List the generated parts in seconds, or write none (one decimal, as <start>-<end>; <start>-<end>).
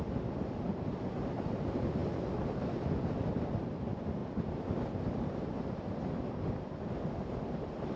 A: none